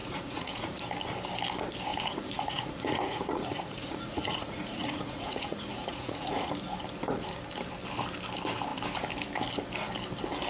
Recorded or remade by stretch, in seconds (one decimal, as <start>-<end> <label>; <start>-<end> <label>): 0.0-0.8 remade; 0.8-1.9 recorded; 1.9-6.5 remade; 6.5-10.5 recorded

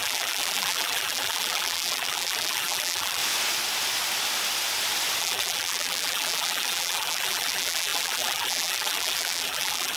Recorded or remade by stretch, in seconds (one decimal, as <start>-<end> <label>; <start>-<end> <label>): 0.0-3.2 remade; 3.2-5.2 recorded; 5.2-10.0 remade

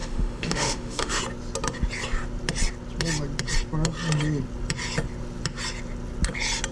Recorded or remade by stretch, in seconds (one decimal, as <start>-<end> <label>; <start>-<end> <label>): 0.0-1.2 remade; 1.2-6.7 recorded

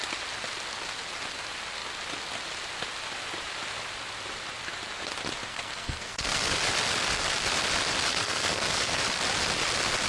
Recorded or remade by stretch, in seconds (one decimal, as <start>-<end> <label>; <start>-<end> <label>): 0.0-5.5 recorded; 5.5-6.5 remade; 6.5-8.1 recorded; 8.1-9.0 remade; 9.0-10.1 recorded

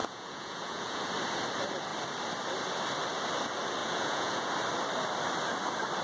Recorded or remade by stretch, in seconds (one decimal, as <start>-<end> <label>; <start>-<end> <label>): 0.0-1.1 remade; 1.1-3.8 recorded; 3.8-4.5 remade; 4.5-6.0 recorded